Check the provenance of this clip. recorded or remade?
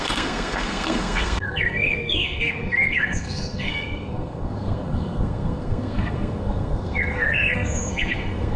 remade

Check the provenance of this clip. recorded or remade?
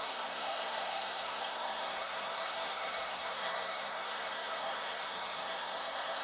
remade